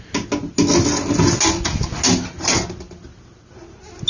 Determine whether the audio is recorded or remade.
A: recorded